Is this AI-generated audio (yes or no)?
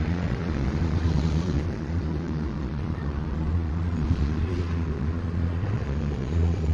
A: yes